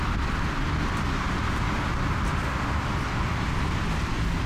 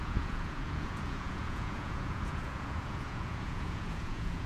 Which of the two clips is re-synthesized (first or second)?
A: second